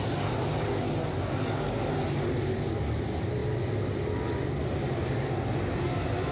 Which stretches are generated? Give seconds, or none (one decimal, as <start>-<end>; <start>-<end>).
none